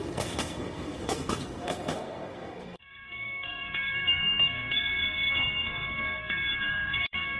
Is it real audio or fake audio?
fake